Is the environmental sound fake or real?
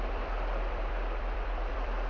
fake